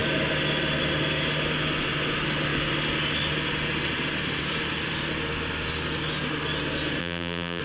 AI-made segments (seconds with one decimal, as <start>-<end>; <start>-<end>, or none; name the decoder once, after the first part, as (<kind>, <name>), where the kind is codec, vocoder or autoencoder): 7.0-7.6 (vocoder, BigVGAN v2)